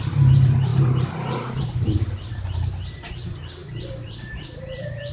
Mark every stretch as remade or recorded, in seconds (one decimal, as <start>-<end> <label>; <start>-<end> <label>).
0.0-5.1 remade